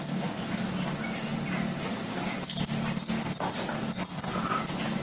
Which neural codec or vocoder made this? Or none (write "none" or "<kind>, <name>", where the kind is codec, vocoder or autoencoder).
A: none